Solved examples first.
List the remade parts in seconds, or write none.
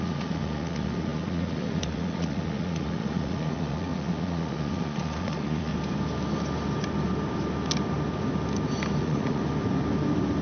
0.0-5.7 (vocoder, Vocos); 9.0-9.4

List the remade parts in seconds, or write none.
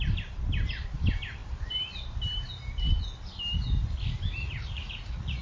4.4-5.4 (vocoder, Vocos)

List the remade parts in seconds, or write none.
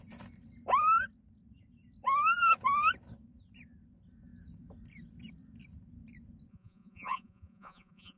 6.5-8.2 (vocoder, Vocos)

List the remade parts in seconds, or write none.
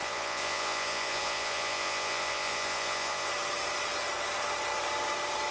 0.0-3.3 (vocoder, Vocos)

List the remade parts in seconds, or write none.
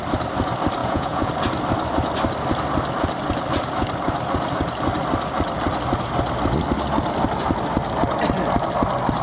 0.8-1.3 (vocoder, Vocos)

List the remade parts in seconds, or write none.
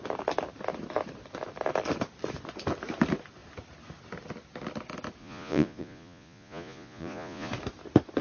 5.2-7.5 (vocoder, Vocos)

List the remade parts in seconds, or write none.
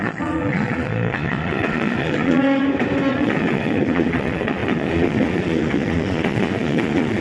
0.0-2.6 (vocoder, Vocos); 3.1-7.2